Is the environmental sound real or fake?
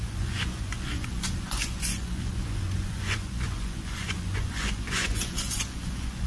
fake